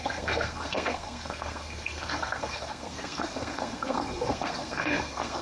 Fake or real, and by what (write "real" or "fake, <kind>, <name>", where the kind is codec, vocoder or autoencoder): fake, codec, SNAC